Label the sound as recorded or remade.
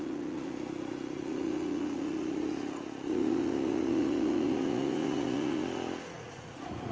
remade